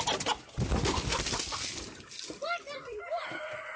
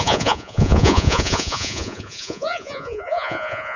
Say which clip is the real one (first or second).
first